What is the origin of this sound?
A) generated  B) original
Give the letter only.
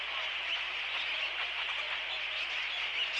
B